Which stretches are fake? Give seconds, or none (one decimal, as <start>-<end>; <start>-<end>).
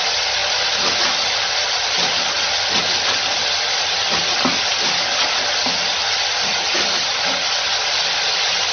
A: none